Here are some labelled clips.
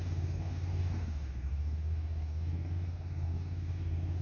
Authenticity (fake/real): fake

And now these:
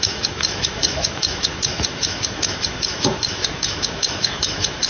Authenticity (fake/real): fake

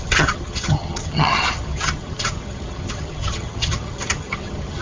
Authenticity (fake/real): fake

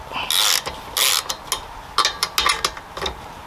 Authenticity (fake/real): real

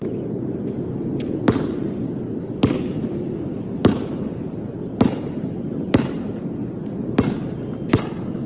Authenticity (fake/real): real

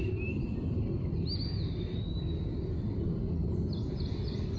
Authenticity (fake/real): real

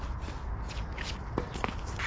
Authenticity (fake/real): real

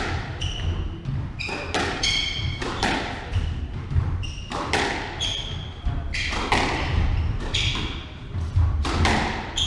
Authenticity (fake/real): real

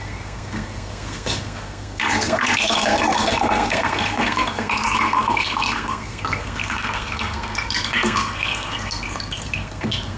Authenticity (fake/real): fake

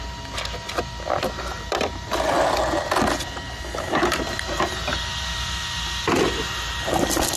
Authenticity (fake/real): real